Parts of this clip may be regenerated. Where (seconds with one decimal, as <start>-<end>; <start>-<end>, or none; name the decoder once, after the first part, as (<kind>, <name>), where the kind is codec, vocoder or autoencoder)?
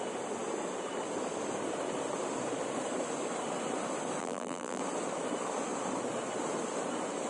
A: 4.2-4.8 (vocoder, BigVGAN v2)